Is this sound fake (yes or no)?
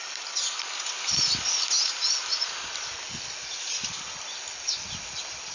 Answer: no